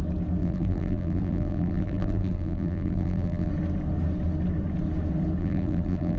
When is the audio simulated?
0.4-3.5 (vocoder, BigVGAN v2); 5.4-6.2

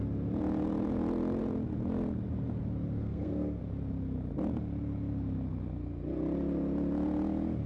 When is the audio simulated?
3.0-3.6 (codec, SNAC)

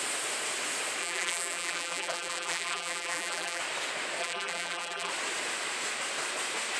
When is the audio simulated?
1.0-3.6 (vocoder, BigVGAN v2); 4.2-5.1